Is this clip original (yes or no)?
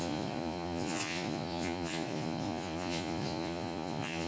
no